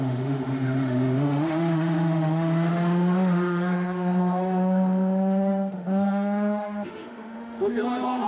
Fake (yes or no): yes